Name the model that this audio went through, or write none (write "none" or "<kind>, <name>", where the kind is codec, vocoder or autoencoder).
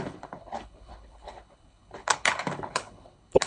codec, HILCodec